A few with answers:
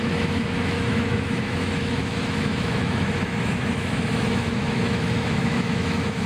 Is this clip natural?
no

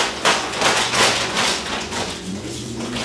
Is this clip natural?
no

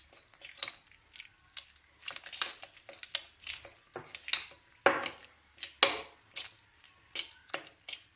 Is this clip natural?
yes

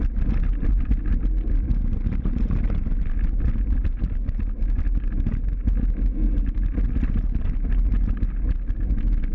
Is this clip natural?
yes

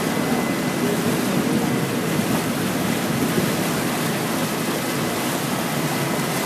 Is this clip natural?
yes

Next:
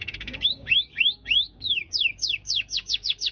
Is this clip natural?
no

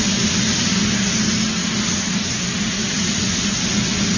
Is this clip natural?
yes